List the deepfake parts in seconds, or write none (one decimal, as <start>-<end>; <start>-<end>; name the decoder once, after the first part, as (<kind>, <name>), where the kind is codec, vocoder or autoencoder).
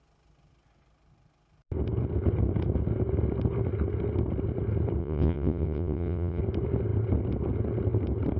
5.0-6.4 (vocoder, WaveNeXt)